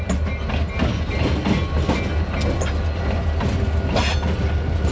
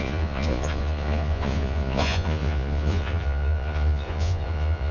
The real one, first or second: first